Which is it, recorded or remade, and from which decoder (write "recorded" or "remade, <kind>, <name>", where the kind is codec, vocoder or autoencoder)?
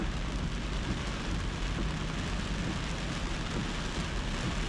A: recorded